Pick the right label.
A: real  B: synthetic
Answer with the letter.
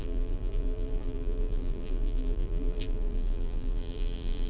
B